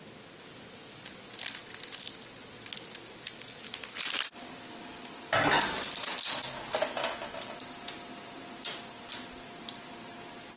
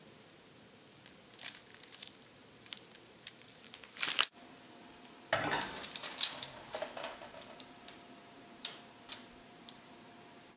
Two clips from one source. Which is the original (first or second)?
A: first